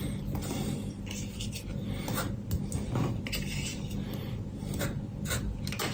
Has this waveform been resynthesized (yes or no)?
no